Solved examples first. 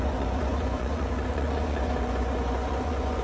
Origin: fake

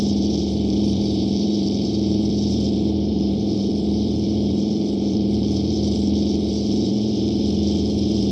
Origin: fake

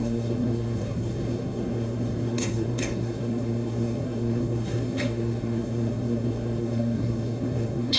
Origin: fake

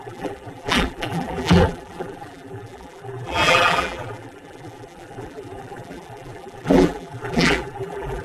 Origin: fake